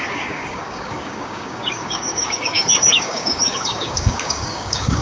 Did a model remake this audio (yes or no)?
yes